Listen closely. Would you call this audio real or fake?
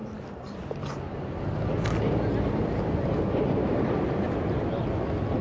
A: real